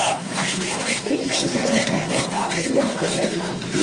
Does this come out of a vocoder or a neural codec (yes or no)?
yes